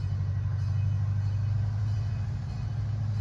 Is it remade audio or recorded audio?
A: recorded